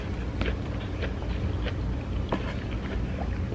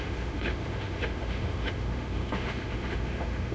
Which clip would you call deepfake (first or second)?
second